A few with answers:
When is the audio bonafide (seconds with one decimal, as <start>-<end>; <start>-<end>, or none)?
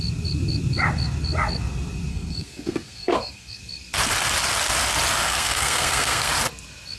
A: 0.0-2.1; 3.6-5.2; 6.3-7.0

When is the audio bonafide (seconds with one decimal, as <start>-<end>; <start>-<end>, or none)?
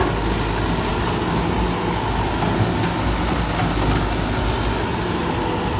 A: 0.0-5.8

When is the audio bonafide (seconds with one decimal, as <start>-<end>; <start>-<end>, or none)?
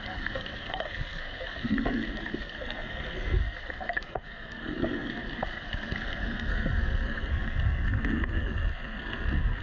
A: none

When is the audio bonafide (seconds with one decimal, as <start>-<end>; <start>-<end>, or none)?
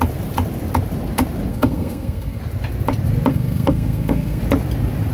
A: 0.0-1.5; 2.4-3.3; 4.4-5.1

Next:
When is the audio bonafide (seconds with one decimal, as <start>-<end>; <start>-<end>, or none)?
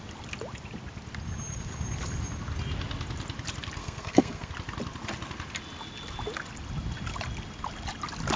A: 0.0-3.8; 4.5-8.4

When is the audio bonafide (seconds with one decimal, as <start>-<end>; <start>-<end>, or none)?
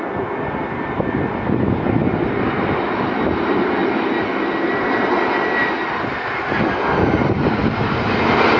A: 0.0-8.6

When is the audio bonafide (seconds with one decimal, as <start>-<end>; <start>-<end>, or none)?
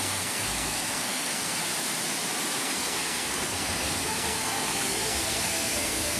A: 1.7-2.6